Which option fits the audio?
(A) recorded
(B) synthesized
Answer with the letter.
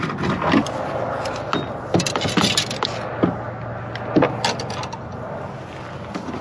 A